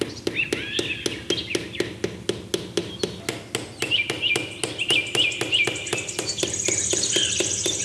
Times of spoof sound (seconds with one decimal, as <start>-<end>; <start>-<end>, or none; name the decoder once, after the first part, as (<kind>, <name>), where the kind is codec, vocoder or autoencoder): none